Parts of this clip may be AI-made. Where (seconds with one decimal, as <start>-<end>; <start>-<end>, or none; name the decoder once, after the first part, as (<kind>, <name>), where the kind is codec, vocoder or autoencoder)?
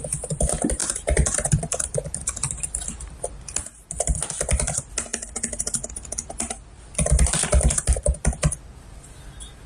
0.8-2.2 (vocoder, BigVGAN v2)